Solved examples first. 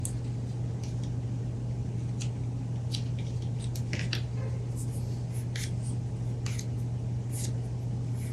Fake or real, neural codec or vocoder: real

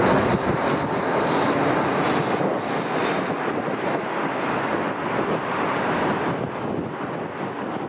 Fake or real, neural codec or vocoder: real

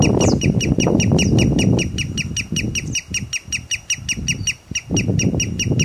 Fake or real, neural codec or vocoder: real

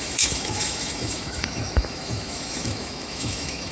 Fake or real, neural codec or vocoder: fake, autoencoder, DAC-VAE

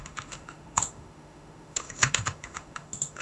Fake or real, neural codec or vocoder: fake, autoencoder, DAC-VAE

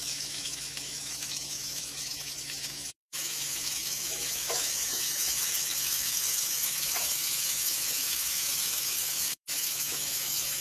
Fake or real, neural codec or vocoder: fake, autoencoder, DAC-VAE